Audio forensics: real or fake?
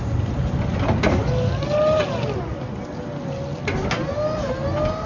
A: real